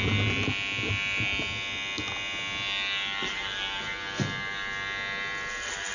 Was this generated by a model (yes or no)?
no